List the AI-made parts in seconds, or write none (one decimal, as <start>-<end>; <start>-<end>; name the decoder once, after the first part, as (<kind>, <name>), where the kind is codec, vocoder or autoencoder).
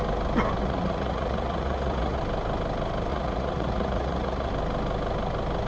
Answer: 0.6-2.2 (vocoder, Vocos); 3.1-4.5